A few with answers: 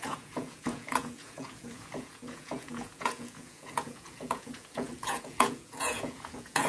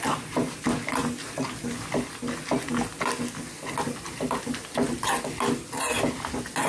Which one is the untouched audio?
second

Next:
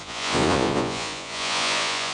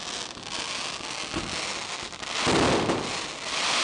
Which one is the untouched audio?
second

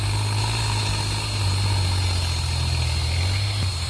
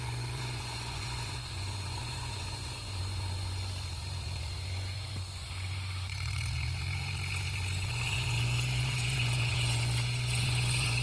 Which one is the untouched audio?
first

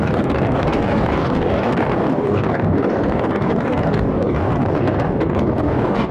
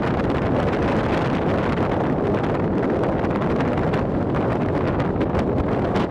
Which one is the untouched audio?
second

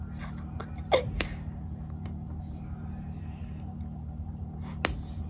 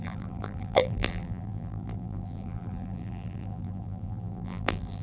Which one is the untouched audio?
first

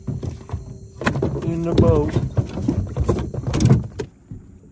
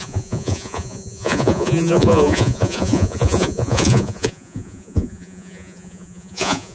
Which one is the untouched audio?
first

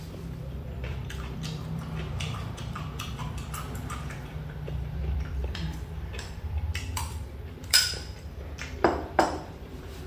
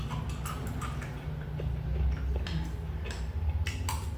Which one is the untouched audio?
second